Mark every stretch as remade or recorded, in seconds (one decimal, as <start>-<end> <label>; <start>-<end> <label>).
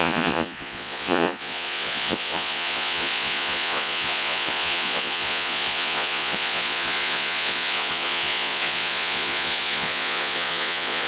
0.0-11.1 remade